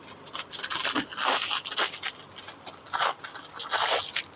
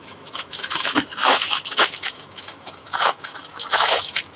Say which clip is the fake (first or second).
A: second